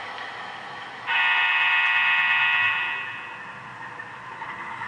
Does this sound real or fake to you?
real